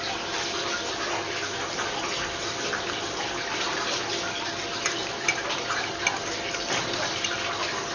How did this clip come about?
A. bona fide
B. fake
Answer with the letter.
A